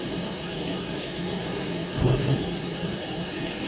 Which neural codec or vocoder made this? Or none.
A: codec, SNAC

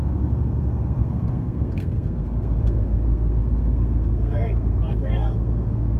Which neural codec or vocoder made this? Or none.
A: codec, SNAC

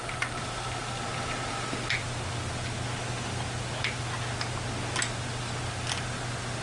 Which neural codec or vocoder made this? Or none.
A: none